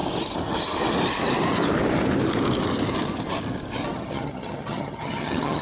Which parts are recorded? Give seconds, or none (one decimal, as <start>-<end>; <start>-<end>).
0.0-3.9